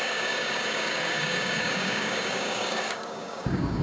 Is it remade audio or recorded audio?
remade